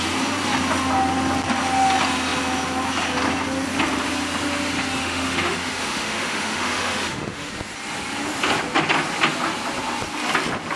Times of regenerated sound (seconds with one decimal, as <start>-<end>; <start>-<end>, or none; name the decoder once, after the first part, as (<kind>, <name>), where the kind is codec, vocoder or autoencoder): 5.0-7.5 (autoencoder, DAC-VAE)